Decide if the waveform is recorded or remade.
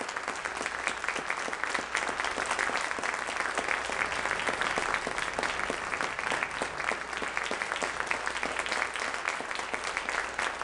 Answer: recorded